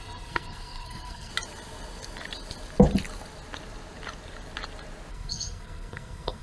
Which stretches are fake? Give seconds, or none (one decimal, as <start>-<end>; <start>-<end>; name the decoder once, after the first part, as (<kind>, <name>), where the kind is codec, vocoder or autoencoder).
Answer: 0.0-1.3 (codec, SNAC); 5.1-6.4